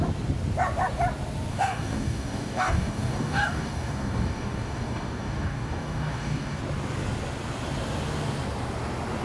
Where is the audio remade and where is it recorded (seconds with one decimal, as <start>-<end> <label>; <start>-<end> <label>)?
0.0-1.5 recorded; 1.5-6.6 remade; 6.6-9.2 recorded